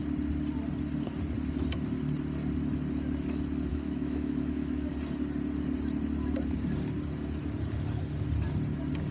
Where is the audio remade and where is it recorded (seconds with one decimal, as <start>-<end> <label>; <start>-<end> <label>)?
0.0-3.7 recorded; 3.7-4.9 remade; 4.9-9.1 recorded